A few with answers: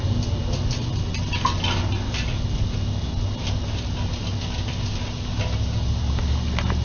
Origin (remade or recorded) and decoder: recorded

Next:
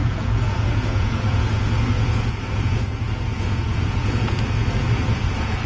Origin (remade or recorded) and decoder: remade, vocoder, Vocos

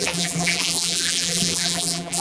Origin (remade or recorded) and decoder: remade, vocoder, BigVGAN v2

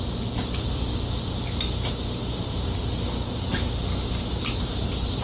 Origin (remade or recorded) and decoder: recorded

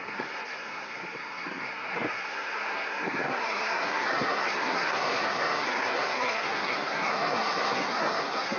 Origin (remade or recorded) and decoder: remade, codec, SNAC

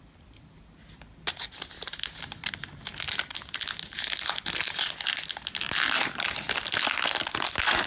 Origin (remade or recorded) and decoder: recorded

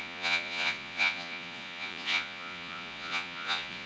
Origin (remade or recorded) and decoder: remade, vocoder, Vocos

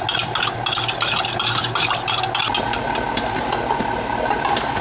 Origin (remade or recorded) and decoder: recorded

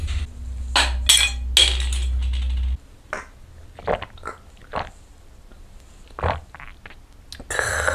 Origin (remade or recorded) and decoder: recorded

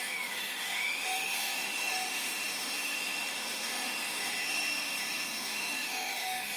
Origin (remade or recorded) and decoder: remade, autoencoder, DAC-VAE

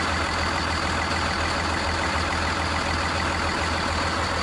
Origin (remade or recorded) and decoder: recorded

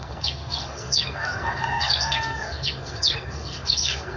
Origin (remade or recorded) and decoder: remade, codec, SNAC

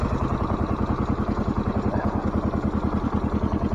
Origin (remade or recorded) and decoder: recorded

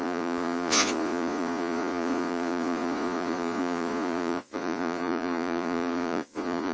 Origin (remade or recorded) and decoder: remade, vocoder, Vocos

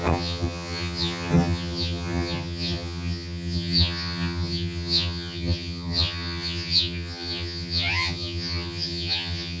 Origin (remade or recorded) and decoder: remade, vocoder, HiFi-GAN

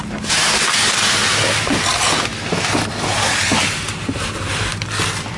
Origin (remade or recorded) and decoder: recorded